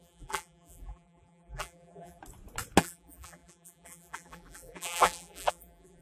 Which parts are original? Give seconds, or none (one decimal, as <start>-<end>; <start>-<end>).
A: 2.2-2.8